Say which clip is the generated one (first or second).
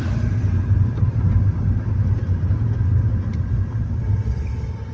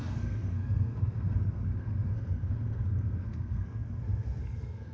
second